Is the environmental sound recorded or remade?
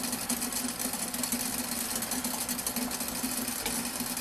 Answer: recorded